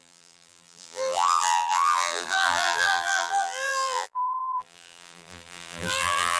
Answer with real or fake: fake